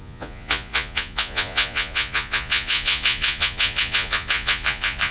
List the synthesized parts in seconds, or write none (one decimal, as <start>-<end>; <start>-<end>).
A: 0.0-5.1

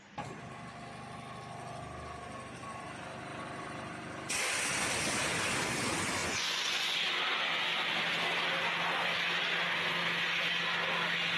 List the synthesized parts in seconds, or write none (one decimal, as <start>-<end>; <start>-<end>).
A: 6.2-7.0

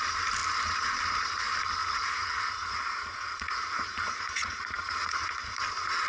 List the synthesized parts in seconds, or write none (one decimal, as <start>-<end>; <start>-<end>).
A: 1.8-5.5